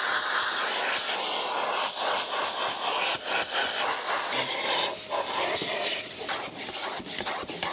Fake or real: real